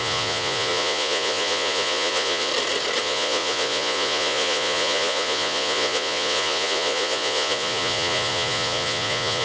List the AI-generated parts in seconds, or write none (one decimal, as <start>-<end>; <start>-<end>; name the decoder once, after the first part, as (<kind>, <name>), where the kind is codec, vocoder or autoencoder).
0.0-2.5 (vocoder, Vocos); 3.0-9.4